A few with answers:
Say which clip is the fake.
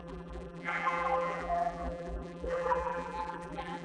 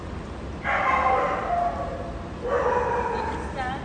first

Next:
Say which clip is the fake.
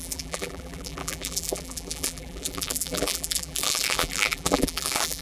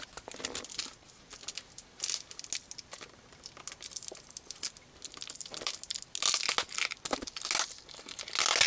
first